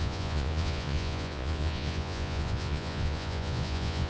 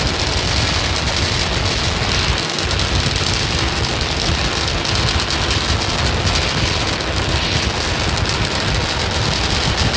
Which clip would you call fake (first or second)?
first